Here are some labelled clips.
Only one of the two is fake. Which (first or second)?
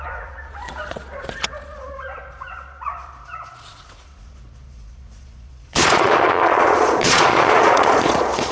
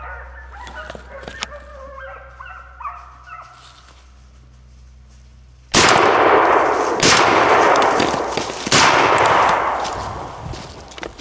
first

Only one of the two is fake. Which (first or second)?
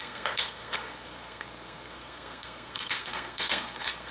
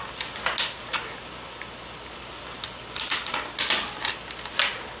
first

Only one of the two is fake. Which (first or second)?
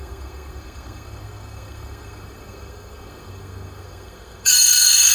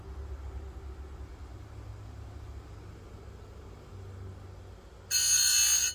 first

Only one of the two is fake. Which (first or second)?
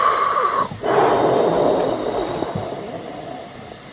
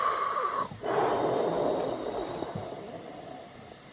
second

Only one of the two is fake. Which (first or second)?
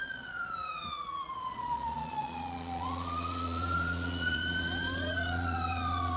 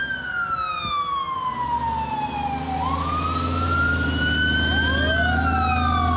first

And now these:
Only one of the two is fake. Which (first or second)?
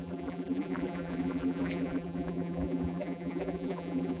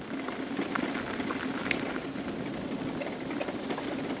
first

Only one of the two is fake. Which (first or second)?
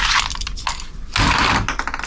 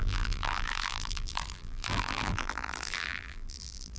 second